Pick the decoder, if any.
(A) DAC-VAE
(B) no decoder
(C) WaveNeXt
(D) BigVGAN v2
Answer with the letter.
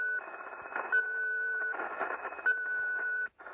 D